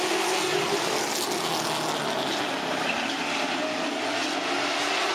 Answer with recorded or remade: recorded